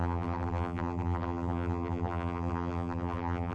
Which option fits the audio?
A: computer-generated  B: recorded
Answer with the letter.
A